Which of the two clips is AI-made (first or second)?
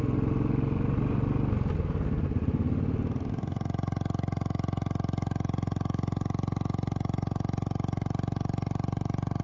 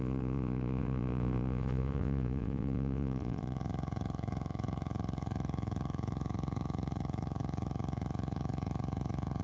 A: second